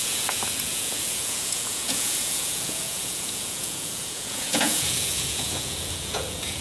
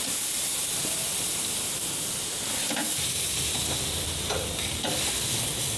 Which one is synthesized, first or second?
first